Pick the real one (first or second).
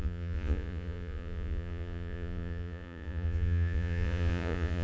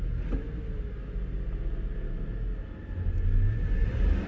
second